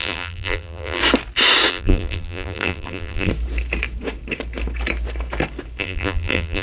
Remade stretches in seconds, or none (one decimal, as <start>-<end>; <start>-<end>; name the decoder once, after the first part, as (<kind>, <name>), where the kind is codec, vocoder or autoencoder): 0.0-1.0 (vocoder, BigVGAN v2); 1.7-3.3; 5.8-6.6